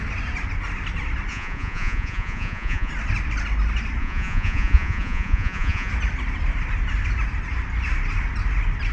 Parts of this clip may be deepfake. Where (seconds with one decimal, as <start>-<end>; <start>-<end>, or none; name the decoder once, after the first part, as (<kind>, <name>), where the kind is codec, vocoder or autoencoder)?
1.3-2.9 (vocoder, Vocos); 4.0-5.9